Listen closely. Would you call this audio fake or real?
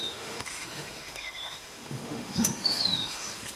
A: fake